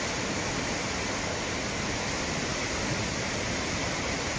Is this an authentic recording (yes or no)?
yes